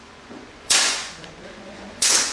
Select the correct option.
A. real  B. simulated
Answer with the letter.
B